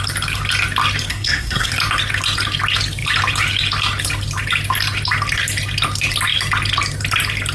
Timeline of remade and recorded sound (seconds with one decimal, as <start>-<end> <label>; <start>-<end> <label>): 0.0-1.1 recorded; 1.1-1.7 remade; 1.7-7.5 recorded